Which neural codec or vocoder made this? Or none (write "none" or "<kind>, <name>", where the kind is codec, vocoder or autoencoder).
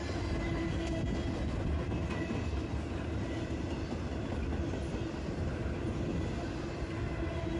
none